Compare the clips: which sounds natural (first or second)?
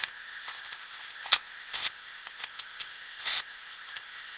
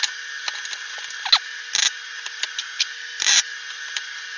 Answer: second